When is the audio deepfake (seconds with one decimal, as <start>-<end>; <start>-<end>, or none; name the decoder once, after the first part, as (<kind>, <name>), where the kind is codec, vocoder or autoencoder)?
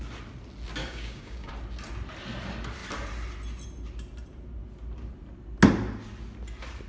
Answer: 0.8-1.5 (codec, DAC)